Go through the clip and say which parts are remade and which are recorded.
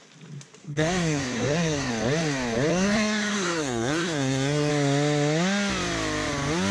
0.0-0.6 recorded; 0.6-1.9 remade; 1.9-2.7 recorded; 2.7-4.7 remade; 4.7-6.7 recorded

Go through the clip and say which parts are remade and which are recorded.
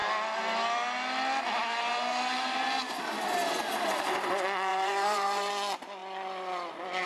0.0-4.7 recorded; 4.7-5.5 remade; 5.5-7.1 recorded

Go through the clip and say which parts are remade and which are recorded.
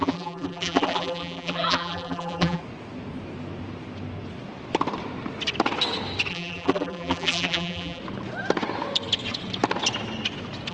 0.0-2.6 remade; 2.6-6.3 recorded; 6.3-8.0 remade; 8.0-10.7 recorded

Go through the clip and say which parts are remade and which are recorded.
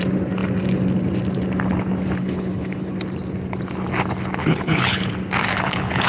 0.0-2.2 recorded; 2.2-2.9 remade; 2.9-4.4 recorded; 4.4-5.1 remade; 5.1-5.5 recorded; 5.5-6.1 remade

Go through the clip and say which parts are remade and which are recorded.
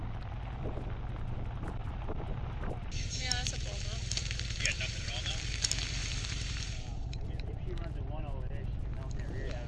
0.0-1.8 recorded; 1.8-5.3 remade; 5.3-6.0 recorded; 6.0-8.4 remade; 8.4-9.7 recorded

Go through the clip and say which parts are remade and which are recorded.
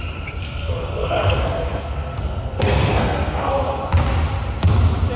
0.0-0.4 recorded; 0.4-3.5 remade; 3.5-5.2 recorded